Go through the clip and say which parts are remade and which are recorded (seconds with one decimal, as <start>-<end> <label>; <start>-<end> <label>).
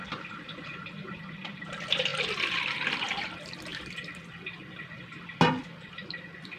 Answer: 0.0-6.6 recorded